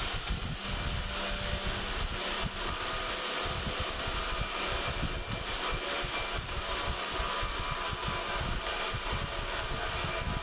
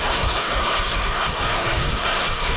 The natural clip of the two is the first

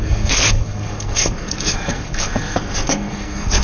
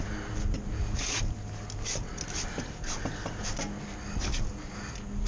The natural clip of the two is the second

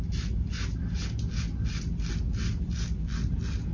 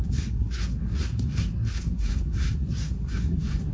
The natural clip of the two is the first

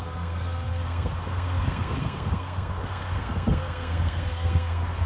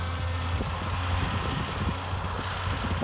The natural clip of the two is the second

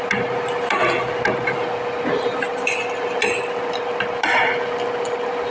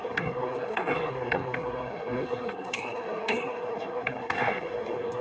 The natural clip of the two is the first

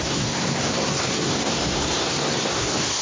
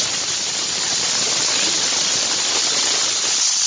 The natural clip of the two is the second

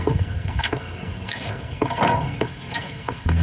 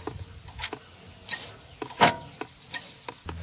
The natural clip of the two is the second